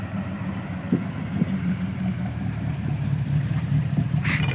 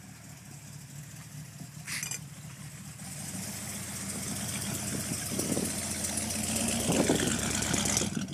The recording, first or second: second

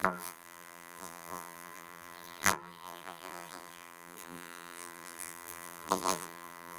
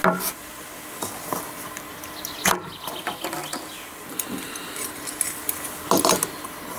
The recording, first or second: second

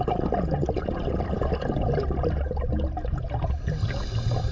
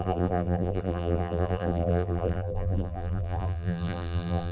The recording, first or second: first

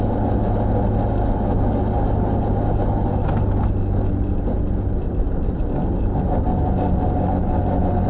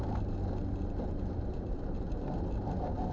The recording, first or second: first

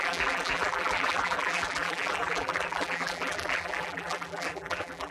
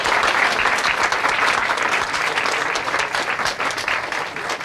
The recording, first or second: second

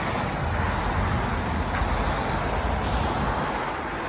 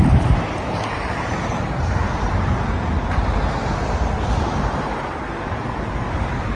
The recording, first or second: first